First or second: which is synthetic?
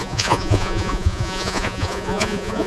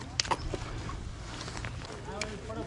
first